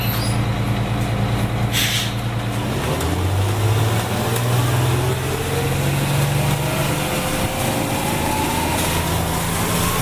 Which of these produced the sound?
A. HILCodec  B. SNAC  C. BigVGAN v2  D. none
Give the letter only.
D